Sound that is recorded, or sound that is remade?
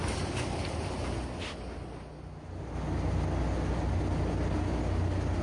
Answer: recorded